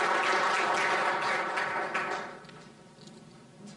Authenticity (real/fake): real